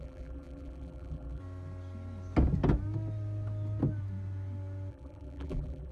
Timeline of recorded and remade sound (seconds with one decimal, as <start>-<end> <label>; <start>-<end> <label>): 0.0-1.4 remade; 1.4-4.9 recorded; 4.9-5.9 remade